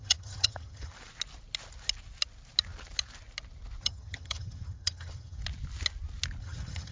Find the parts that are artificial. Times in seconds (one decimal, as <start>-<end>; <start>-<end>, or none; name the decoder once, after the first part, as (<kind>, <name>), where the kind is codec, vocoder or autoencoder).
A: 0.0-0.9 (vocoder, HiFi-GAN); 3.8-5.4; 6.4-6.9